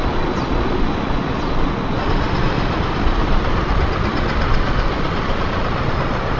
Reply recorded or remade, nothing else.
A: remade